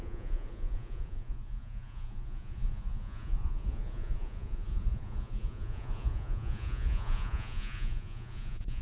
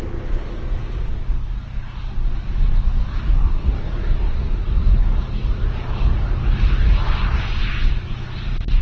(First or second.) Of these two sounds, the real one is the second